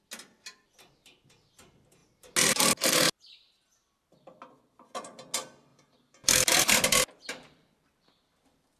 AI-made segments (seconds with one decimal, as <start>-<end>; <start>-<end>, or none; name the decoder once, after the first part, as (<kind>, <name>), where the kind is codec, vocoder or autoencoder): 5.7-7.9 (vocoder, BigVGAN v2)